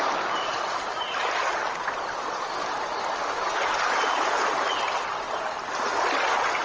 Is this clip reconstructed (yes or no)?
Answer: no